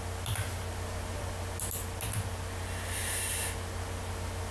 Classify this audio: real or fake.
real